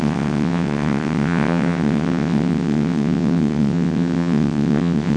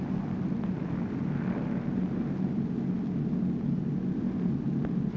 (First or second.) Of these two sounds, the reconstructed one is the first